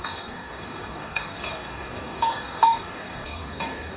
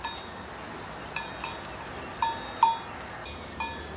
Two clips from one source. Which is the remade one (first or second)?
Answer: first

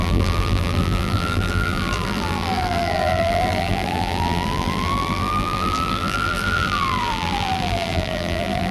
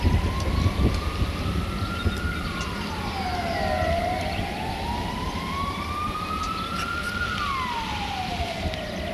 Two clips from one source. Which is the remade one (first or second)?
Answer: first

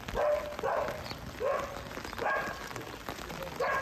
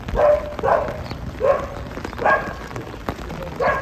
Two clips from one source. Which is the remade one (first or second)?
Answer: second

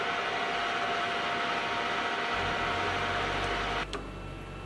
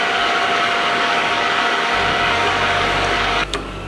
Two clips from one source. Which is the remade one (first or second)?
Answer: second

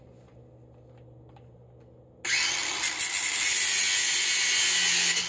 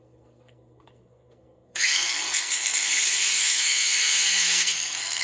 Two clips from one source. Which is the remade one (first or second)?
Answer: second